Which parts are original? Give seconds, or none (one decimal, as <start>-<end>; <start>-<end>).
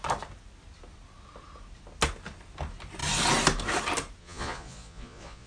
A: 0.0-4.2